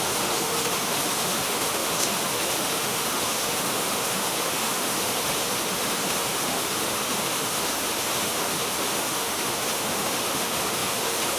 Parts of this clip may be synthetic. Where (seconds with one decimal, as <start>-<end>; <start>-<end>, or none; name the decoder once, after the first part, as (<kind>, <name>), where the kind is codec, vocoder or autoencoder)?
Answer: 0.0-11.4 (autoencoder, DAC-VAE)